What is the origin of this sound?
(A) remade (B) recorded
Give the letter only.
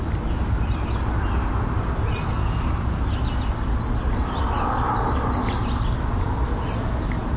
B